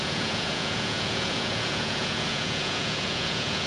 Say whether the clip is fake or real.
fake